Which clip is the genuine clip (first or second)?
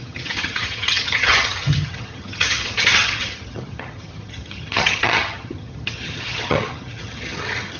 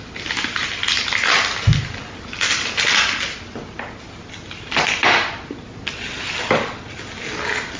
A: second